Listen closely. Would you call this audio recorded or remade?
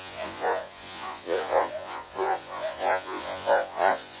remade